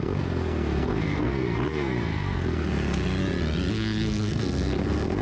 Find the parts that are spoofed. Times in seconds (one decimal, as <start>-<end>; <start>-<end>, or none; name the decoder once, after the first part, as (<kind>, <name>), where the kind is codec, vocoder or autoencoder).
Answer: 0.0-3.2 (codec, SNAC); 3.7-5.2